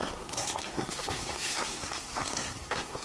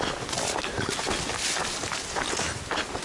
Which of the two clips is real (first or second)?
second